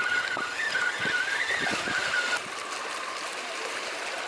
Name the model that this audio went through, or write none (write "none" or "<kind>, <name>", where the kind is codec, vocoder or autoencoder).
none